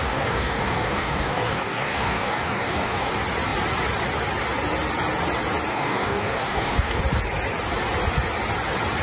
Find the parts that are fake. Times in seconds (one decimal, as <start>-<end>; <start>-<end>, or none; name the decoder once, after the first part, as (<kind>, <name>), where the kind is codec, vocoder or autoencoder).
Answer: 0.0-3.1 (codec, DAC); 5.7-7.0